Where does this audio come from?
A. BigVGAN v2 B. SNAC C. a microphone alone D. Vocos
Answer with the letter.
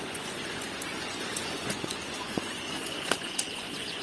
D